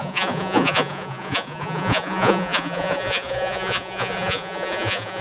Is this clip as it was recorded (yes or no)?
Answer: no